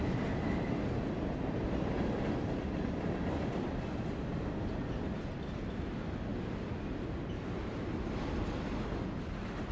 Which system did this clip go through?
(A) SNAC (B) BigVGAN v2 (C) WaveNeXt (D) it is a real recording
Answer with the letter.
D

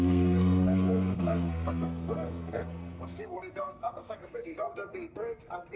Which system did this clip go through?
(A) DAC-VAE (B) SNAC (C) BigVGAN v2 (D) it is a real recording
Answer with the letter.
B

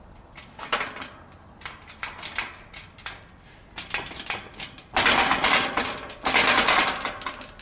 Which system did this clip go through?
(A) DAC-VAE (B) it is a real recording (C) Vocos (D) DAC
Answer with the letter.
B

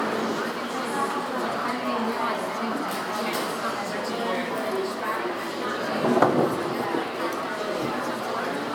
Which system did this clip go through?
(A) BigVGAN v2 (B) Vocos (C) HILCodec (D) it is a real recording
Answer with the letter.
D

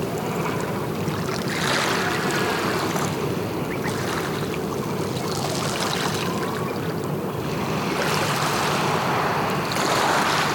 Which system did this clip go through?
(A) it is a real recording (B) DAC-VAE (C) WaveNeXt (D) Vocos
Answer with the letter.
A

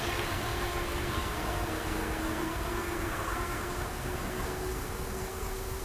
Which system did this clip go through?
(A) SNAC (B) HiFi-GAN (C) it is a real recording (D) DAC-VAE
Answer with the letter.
A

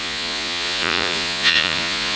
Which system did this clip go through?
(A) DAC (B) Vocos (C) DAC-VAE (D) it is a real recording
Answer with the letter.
B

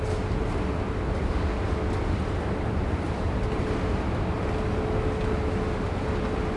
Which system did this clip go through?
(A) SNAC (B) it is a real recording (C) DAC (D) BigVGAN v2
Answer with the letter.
B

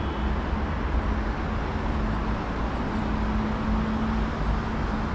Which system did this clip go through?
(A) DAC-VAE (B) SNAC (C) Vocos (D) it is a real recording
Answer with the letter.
D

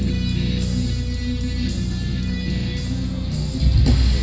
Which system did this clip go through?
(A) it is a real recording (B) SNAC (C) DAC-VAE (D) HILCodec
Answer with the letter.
A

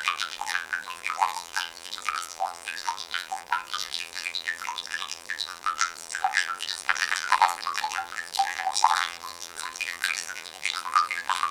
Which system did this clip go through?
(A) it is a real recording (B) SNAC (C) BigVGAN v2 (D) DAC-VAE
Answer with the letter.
C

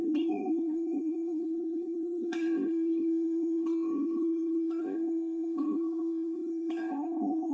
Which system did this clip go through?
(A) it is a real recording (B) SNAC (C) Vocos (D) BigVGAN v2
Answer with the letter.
B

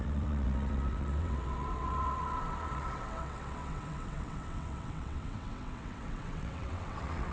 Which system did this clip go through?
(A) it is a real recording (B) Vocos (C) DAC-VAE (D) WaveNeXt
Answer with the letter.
D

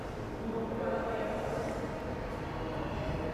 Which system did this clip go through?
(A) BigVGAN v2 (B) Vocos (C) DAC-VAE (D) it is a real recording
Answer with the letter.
D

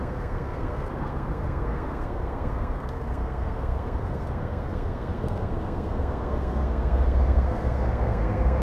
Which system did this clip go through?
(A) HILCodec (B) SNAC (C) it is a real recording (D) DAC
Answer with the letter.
B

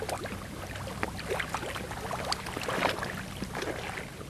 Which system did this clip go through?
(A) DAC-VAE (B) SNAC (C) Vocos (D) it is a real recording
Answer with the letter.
D